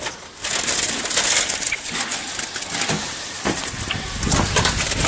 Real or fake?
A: real